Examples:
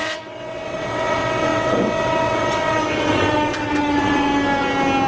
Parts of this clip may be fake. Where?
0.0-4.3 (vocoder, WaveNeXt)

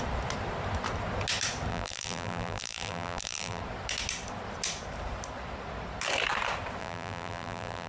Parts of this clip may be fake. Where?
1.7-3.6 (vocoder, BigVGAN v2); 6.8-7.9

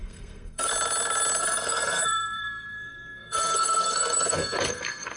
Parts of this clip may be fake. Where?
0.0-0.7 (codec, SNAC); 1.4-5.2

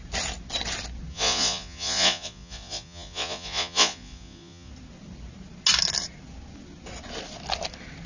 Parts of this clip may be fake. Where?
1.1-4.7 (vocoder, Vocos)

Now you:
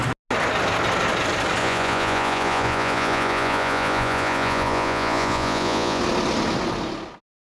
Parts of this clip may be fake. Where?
1.6-6.0 (vocoder, Vocos)